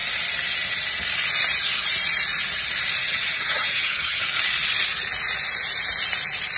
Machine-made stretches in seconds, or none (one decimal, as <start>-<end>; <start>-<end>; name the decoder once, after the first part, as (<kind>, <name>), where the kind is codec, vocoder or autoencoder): 3.0-4.2 (vocoder, HiFi-GAN)